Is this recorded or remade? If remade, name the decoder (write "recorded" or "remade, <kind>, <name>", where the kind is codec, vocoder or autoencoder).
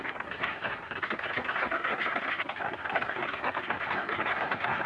remade, codec, SNAC